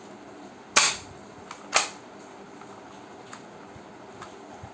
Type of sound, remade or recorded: recorded